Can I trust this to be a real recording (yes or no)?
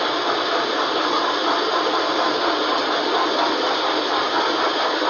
yes